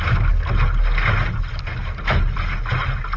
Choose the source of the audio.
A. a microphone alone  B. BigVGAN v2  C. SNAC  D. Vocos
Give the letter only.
A